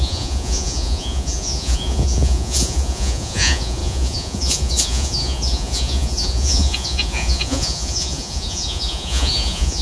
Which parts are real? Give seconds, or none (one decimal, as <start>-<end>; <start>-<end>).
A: none